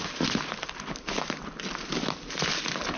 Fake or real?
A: real